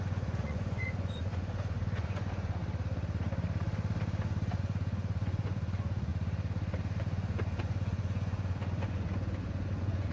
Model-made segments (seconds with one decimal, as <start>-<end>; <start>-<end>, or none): 0.0-2.6; 4.6-6.1; 7.0-10.1